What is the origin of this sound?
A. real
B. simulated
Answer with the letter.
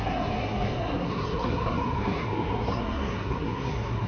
B